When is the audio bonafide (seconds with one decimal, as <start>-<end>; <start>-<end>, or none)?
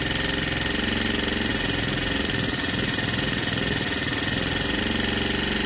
0.0-1.5; 4.8-5.7